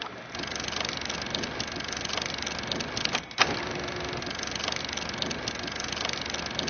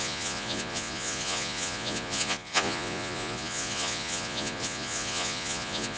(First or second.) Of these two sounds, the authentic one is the first